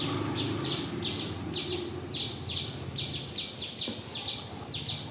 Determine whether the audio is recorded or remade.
recorded